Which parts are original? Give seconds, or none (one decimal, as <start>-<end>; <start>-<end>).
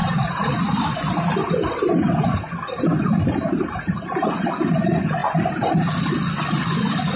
1.9-2.9; 4.3-7.2